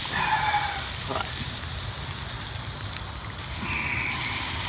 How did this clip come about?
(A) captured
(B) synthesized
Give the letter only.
A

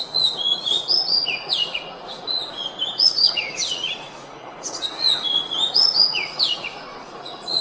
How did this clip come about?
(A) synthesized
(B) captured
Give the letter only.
A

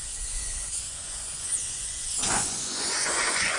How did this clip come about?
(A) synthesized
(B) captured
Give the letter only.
A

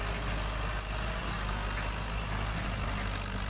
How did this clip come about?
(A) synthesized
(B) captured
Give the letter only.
B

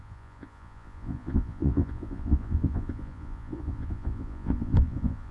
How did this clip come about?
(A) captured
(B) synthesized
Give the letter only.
B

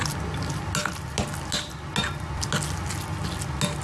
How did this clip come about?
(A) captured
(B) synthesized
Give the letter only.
A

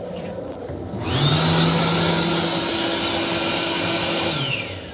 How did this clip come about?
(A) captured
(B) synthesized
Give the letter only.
A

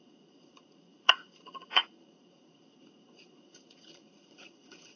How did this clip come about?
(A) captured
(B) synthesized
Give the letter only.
B